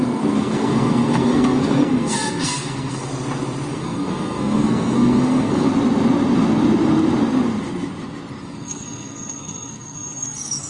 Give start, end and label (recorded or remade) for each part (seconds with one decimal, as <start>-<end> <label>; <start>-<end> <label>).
0.0-3.1 remade; 3.1-3.7 recorded; 3.7-5.7 remade; 5.7-8.4 recorded; 8.4-10.7 remade